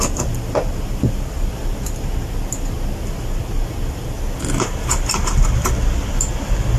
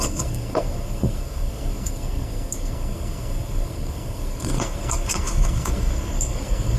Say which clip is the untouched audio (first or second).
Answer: first